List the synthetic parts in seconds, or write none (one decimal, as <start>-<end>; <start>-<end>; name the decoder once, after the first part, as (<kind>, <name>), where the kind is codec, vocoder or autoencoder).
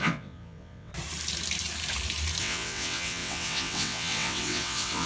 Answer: 0.0-0.9 (vocoder, WaveNeXt); 2.4-5.1